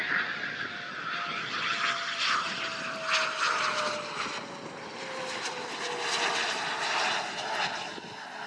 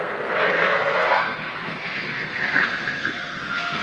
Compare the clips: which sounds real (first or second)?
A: first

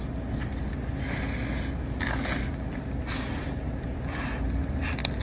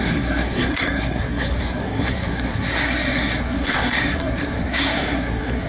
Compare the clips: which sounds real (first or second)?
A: first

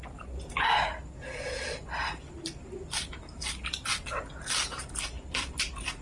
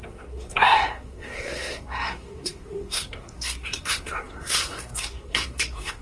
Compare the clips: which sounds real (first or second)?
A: first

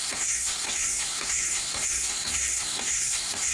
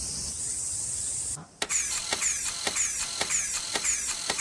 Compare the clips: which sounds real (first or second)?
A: second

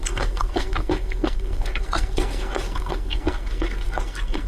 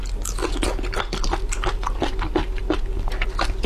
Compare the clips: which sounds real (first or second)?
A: second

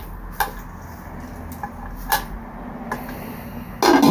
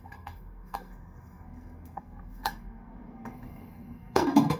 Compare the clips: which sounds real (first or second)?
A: first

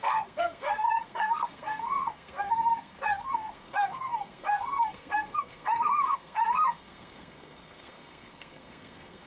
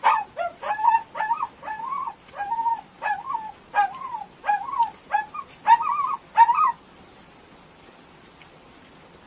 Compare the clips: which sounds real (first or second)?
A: second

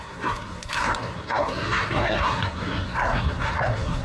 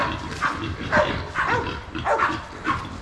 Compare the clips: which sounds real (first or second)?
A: second